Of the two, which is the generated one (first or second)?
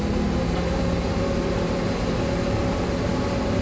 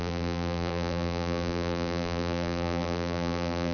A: second